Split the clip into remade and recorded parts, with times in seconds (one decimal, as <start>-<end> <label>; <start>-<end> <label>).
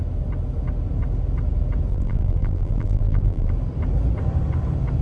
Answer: 0.0-1.9 recorded; 1.9-3.5 remade; 3.5-5.0 recorded